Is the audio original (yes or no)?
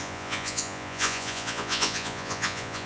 no